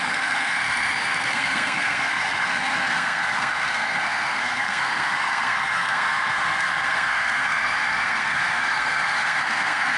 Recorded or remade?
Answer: remade